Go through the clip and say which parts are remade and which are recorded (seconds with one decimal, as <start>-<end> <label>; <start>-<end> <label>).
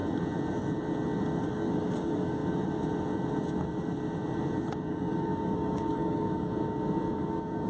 0.0-1.5 recorded; 1.5-2.4 remade; 2.4-4.9 recorded; 4.9-6.5 remade; 6.5-7.3 recorded; 7.3-7.7 remade